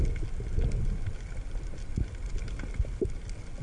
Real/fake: real